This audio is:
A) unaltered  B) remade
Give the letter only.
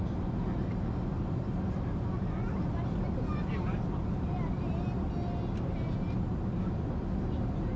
A